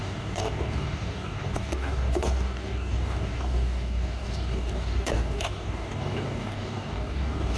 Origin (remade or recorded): remade